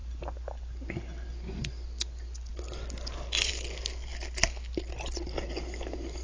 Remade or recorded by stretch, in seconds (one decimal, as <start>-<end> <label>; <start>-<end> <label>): 0.0-6.2 recorded